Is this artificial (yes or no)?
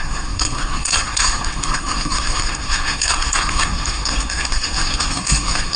yes